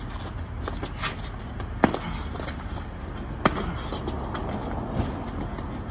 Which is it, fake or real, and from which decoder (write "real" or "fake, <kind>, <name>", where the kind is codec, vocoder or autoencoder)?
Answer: real